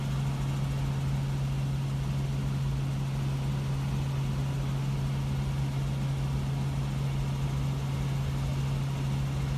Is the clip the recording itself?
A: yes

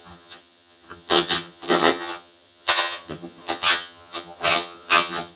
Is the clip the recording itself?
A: no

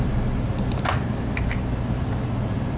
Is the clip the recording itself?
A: yes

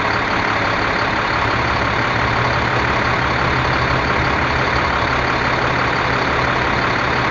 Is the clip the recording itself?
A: yes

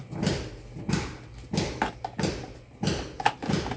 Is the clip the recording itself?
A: yes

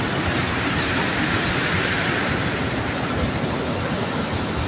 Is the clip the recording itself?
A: yes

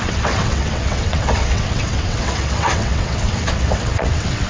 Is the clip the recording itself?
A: no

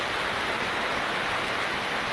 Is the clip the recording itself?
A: yes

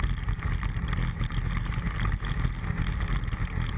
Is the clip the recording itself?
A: yes